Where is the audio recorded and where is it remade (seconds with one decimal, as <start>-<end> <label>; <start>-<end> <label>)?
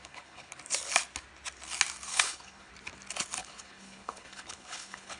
0.0-0.5 remade; 0.5-2.1 recorded; 2.1-2.7 remade; 2.7-3.4 recorded; 3.4-5.2 remade